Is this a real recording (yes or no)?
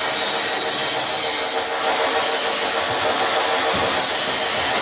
yes